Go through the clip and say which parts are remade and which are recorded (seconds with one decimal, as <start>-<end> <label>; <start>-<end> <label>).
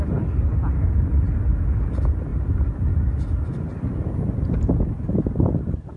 0.0-6.0 recorded